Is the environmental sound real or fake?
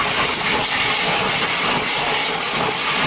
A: real